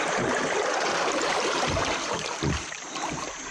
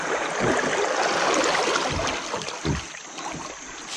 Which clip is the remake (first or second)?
first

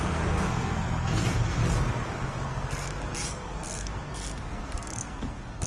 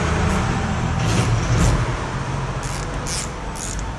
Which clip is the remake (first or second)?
first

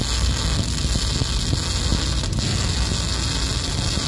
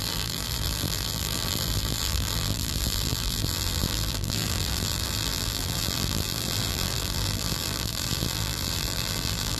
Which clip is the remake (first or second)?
second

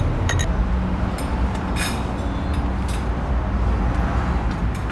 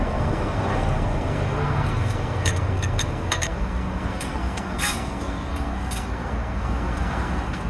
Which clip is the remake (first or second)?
second